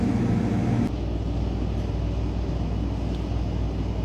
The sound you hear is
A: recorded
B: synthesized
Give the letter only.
A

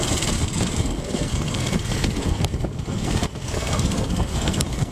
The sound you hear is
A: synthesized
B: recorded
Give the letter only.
A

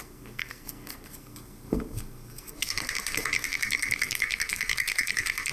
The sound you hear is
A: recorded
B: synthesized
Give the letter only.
B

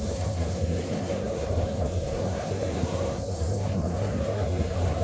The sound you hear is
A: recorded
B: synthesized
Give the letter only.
B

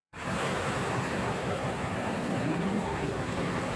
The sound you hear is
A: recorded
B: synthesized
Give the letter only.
B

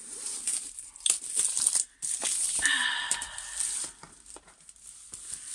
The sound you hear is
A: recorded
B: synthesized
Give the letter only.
A